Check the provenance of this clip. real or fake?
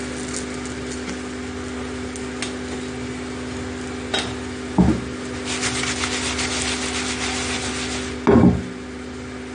real